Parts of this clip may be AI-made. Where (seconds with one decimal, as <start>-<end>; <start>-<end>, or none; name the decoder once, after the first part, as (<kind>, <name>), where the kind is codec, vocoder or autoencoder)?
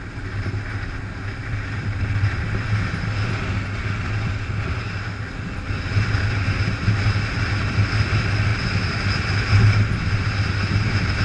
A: none